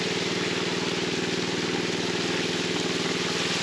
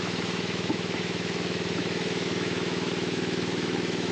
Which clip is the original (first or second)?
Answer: first